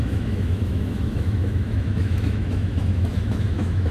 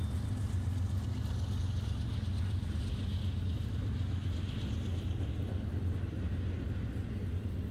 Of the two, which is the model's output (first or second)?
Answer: first